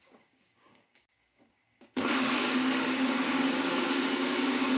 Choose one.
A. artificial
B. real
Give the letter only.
A